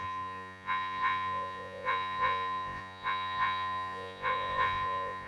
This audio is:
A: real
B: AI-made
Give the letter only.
B